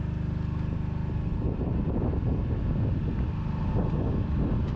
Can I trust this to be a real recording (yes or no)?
yes